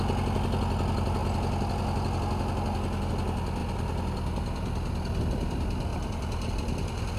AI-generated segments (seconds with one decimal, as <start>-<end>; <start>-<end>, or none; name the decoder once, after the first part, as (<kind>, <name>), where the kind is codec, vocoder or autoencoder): 5.9-6.5 (vocoder, BigVGAN v2)